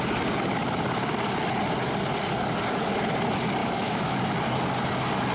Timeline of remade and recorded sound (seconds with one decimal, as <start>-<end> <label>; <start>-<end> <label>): 0.0-3.6 recorded; 3.6-4.2 remade; 4.2-5.3 recorded